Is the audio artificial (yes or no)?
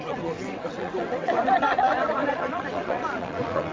yes